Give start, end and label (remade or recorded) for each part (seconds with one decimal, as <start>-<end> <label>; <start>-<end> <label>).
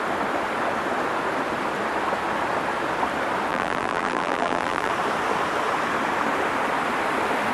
0.0-3.5 recorded; 3.5-4.9 remade; 4.9-7.5 recorded